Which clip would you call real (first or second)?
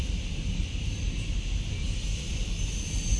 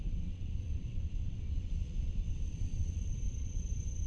first